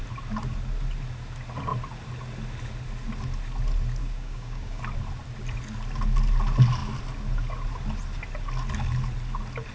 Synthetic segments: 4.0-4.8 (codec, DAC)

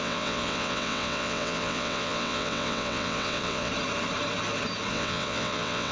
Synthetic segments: 0.0-3.7 (vocoder, WaveNeXt); 4.9-5.9